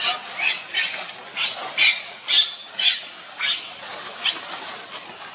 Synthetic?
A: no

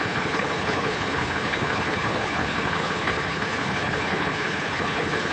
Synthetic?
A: yes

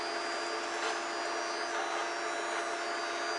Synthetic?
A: no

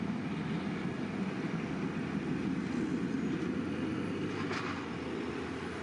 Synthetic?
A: no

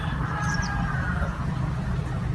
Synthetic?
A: no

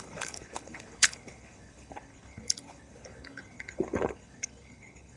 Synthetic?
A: yes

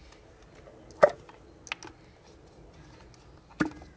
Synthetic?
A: no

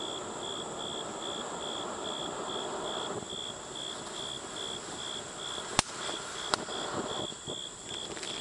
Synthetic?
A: no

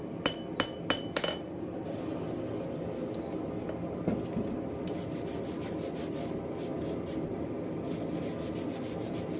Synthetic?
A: no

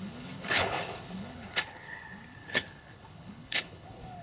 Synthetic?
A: yes